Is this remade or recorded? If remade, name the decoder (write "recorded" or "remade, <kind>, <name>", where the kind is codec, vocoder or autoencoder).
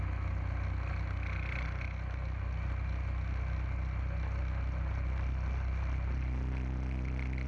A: recorded